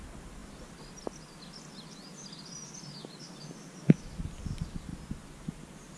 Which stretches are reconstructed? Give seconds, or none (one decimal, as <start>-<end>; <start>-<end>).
none